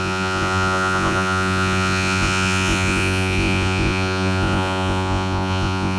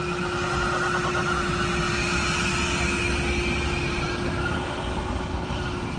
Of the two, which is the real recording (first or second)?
second